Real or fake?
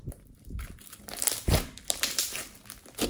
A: real